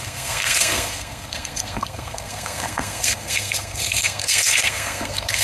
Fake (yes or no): yes